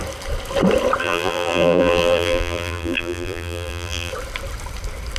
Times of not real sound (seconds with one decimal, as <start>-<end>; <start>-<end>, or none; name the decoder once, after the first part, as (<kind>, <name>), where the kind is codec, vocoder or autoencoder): 1.0-4.1 (vocoder, BigVGAN v2)